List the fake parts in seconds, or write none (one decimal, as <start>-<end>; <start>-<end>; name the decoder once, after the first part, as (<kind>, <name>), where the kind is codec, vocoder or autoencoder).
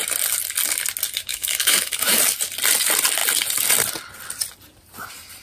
1.3-2.2 (autoencoder, DAC-VAE)